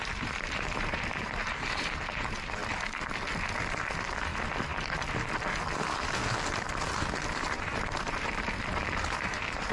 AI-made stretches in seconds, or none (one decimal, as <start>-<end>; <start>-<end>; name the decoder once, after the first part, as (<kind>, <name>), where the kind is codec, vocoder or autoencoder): 0.0-2.6 (vocoder, BigVGAN v2); 7.5-9.7